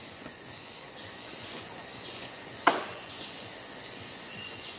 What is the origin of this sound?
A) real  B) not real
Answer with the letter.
B